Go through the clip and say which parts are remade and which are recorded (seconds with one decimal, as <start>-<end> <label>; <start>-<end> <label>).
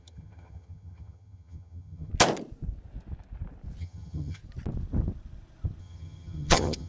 0.0-2.1 remade; 2.1-3.8 recorded; 3.8-4.4 remade; 4.4-5.8 recorded; 5.8-6.9 remade